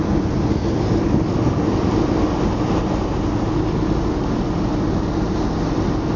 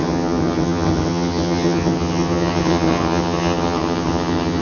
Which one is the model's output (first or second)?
second